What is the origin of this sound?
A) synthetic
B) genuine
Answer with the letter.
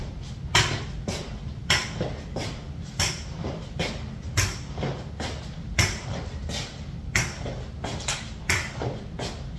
B